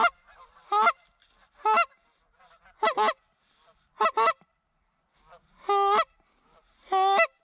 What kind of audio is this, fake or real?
real